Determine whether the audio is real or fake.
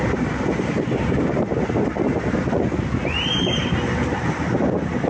real